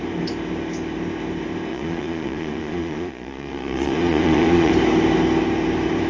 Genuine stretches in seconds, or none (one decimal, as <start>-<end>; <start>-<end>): 0.0-1.7; 4.7-6.1